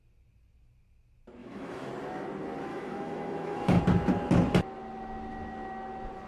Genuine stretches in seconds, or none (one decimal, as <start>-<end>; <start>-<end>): 0.0-1.4; 1.9-2.7; 3.8-6.3